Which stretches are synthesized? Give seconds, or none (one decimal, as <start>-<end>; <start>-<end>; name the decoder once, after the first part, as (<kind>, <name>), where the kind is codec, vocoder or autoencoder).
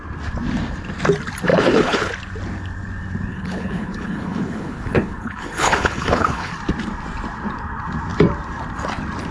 1.5-2.1 (codec, HILCodec); 3.3-6.5